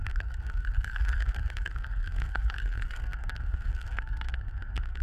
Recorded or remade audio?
remade